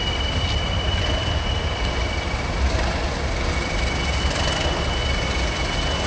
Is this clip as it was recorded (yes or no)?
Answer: yes